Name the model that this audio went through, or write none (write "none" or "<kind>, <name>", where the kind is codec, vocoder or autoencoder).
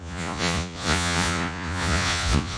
vocoder, Vocos